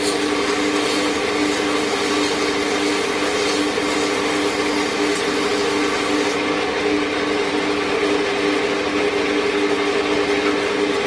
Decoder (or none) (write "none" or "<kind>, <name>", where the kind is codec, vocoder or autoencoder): none